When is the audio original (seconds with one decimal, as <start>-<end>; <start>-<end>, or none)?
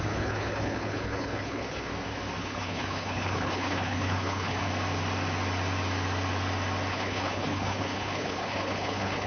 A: 1.9-2.4; 4.7-6.9